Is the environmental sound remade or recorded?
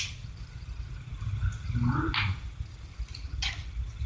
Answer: recorded